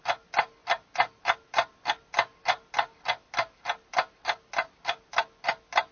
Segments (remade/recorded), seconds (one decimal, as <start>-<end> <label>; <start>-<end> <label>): 0.0-5.9 recorded